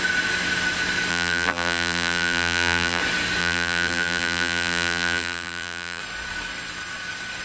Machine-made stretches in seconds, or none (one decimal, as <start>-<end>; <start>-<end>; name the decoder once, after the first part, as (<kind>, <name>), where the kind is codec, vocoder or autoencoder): 1.1-3.0 (vocoder, BigVGAN v2); 3.4-6.0